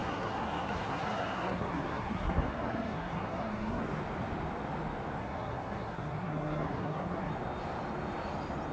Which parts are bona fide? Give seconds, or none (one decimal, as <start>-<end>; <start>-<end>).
3.8-5.2; 7.3-8.7